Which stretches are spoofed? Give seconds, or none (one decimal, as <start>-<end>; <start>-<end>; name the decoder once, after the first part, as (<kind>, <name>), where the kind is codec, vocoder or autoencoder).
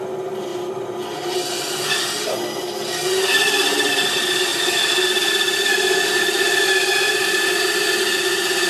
4.5-6.6 (vocoder, BigVGAN v2)